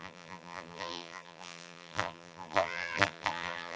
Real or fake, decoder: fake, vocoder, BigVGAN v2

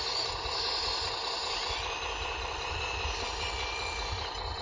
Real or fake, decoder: real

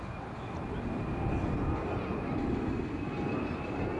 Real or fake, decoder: fake, vocoder, BigVGAN v2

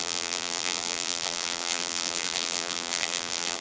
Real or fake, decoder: fake, vocoder, BigVGAN v2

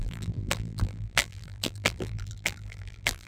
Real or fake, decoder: fake, vocoder, BigVGAN v2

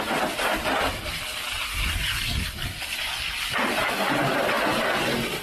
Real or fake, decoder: real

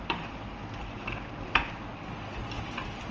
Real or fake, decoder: real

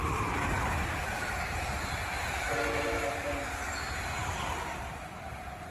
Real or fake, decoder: fake, vocoder, BigVGAN v2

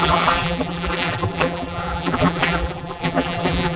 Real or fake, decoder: fake, vocoder, BigVGAN v2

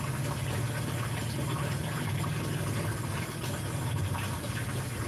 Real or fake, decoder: real